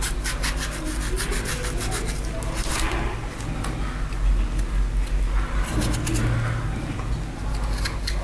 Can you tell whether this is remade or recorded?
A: recorded